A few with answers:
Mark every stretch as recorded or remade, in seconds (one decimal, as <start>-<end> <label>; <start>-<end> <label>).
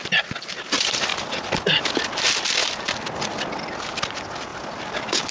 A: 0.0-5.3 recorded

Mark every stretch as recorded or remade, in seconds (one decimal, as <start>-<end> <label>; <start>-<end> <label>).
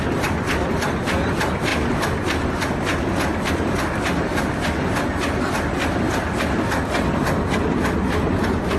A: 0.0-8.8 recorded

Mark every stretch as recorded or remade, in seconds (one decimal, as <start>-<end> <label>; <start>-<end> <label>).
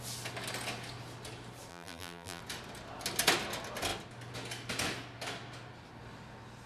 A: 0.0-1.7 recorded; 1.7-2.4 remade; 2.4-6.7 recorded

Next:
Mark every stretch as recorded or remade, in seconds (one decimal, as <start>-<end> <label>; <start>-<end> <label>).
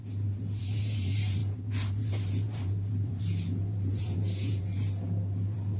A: 0.0-5.8 remade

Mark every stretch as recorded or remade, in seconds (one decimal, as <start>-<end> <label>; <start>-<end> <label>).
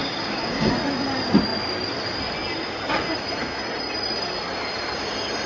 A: 0.0-0.7 remade; 0.7-5.5 recorded